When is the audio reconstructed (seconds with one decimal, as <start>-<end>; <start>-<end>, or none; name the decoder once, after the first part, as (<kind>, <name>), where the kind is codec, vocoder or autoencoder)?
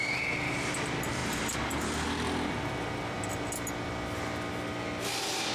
none